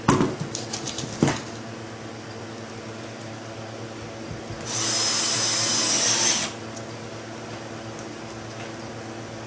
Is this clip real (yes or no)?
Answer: yes